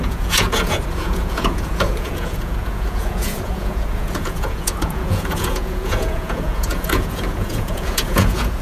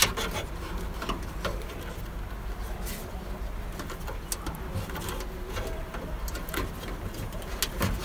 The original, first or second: second